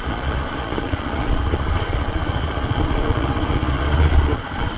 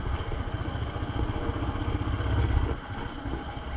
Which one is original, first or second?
second